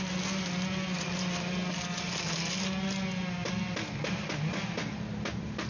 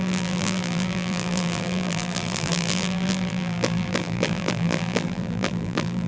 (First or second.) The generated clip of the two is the second